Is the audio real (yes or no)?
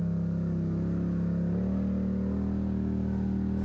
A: yes